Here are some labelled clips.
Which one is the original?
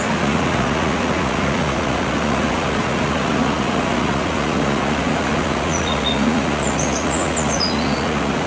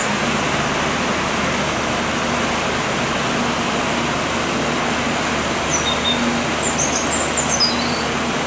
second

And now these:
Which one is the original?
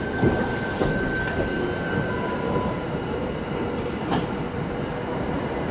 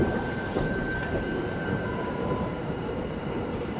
first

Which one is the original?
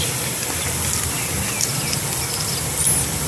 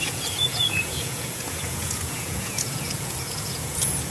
first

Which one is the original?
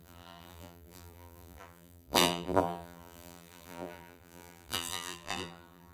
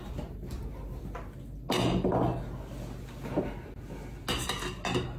second